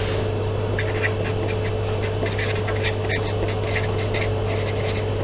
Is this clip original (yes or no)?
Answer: yes